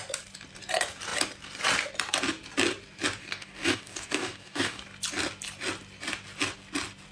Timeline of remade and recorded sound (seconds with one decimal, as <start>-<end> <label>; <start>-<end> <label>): 0.0-3.2 recorded; 3.2-4.8 remade; 4.8-7.1 recorded